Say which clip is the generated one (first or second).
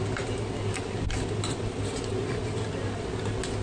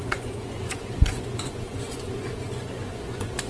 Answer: second